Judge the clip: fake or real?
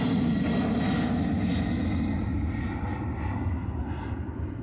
real